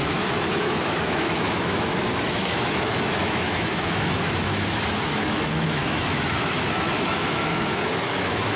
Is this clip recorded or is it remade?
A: remade